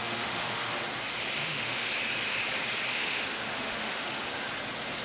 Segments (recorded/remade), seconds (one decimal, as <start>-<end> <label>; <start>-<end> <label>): 0.0-0.7 remade; 0.7-1.4 recorded; 1.4-1.9 remade; 1.9-2.9 recorded; 2.9-4.3 remade; 4.3-5.0 recorded